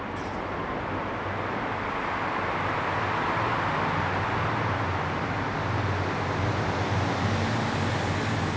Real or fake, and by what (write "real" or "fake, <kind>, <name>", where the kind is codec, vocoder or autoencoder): real